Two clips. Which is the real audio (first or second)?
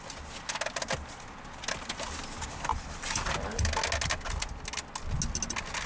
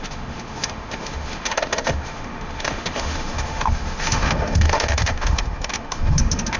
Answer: first